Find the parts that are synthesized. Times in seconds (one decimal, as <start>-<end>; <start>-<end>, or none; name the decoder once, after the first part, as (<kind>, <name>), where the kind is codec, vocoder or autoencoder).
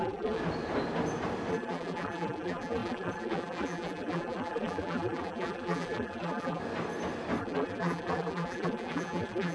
0.0-0.4 (vocoder, BigVGAN v2); 1.5-6.6; 7.4-9.5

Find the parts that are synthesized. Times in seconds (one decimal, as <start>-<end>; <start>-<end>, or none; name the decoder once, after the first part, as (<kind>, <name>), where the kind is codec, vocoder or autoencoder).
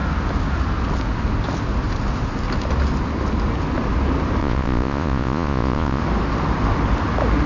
4.4-6.0 (vocoder, Vocos)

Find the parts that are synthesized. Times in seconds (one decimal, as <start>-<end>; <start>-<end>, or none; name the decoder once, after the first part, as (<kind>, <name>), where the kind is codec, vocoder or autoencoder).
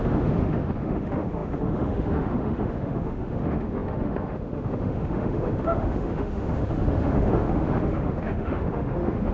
0.0-9.3 (autoencoder, DAC-VAE)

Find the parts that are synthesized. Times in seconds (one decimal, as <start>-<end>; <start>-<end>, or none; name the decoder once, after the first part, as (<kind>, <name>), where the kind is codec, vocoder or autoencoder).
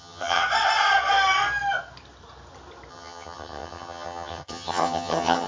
0.0-0.4 (vocoder, HiFi-GAN); 2.9-5.5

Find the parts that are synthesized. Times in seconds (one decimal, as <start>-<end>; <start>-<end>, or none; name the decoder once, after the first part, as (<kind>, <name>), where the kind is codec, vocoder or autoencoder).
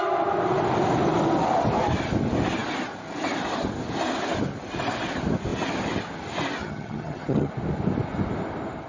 6.6-7.5 (vocoder, HiFi-GAN)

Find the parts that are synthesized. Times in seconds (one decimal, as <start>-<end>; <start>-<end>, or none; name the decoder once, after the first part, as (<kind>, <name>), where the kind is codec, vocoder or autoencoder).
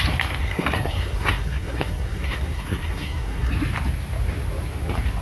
0.4-3.5 (codec, SNAC)